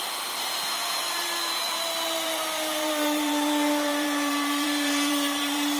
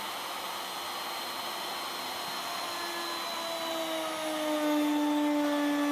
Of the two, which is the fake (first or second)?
first